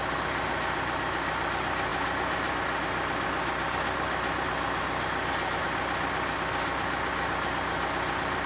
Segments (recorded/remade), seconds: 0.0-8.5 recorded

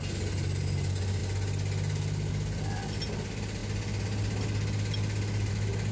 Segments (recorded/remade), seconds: 0.0-5.9 recorded

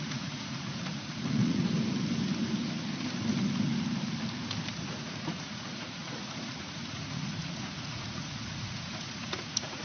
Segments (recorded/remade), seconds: 0.0-1.6 remade; 1.6-4.7 recorded; 4.7-9.8 remade

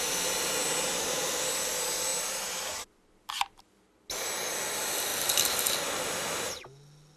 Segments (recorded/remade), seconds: 0.0-7.2 recorded

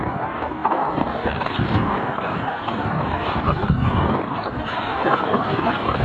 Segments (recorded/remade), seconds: 0.0-6.0 remade

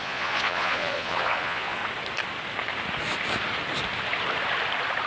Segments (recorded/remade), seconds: 0.0-1.8 remade; 1.8-5.1 recorded

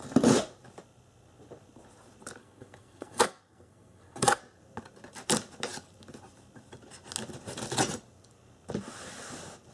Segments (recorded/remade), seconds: 0.0-2.4 recorded; 2.4-4.4 remade; 4.4-9.7 recorded

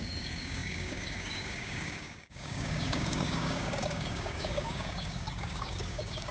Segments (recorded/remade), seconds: 0.0-6.3 remade